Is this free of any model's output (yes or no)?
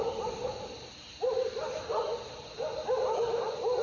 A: yes